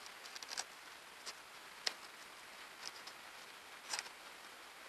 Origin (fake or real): real